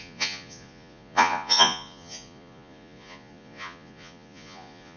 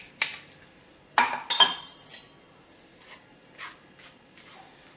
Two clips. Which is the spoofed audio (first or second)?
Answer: first